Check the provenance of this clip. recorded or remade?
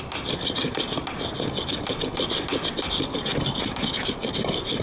recorded